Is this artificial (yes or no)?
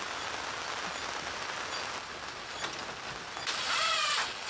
no